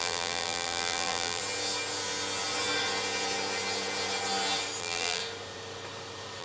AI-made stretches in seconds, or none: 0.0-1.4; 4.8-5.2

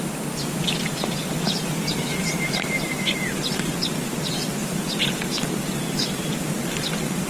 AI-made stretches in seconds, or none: 1.2-3.4

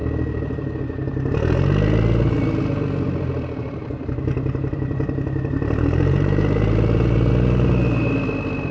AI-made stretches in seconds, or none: 3.6-7.3

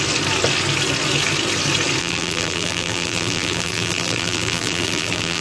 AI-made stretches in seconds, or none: 2.0-5.4

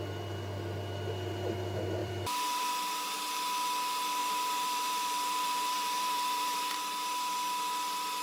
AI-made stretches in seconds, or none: 2.0-2.7; 4.2-6.7

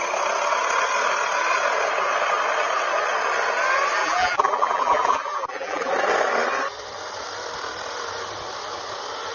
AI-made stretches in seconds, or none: 4.0-5.9

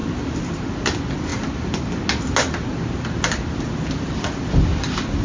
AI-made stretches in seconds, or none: 0.0-0.5